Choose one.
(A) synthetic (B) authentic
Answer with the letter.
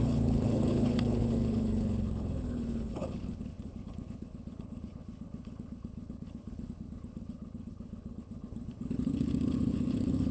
A